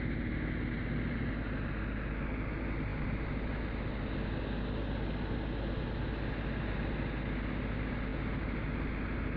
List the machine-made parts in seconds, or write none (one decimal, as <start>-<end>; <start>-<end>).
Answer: none